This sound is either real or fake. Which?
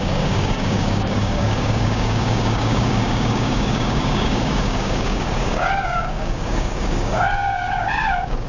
fake